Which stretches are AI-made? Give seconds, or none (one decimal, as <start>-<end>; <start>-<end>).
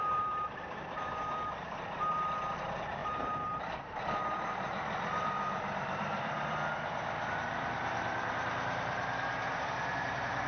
0.0-10.5